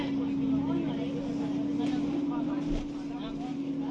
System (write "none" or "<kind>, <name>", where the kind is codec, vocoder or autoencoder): none